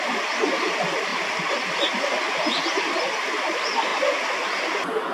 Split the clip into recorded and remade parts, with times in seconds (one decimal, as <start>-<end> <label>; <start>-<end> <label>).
0.0-5.1 recorded

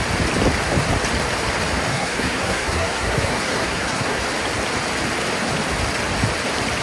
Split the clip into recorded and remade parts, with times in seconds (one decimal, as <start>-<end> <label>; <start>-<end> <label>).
0.0-1.9 recorded; 1.9-4.2 remade; 4.2-6.8 recorded

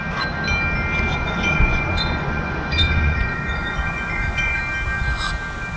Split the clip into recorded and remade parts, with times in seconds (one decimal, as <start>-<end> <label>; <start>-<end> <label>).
0.0-1.1 recorded; 1.1-4.6 remade; 4.6-5.8 recorded

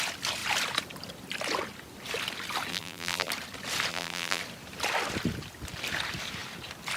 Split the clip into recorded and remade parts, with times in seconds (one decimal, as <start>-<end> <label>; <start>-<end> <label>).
0.0-2.7 recorded; 2.7-3.3 remade; 3.3-3.9 recorded; 3.9-4.4 remade; 4.4-7.0 recorded

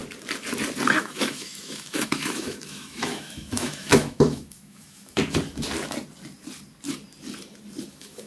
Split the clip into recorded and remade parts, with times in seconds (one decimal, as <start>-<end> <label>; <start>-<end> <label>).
0.0-1.0 recorded; 1.0-5.2 remade; 5.2-7.9 recorded; 7.9-8.3 remade

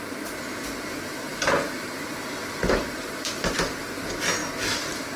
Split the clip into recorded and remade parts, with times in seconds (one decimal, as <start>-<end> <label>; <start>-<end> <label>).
0.0-1.3 recorded; 1.3-4.0 remade; 4.0-5.2 recorded

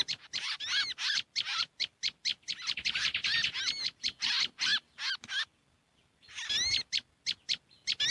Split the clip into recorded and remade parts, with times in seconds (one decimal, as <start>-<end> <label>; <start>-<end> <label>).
0.0-8.1 recorded

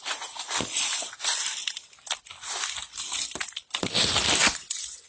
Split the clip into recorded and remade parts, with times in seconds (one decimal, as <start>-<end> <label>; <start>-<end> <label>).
0.0-4.4 recorded; 4.4-5.1 remade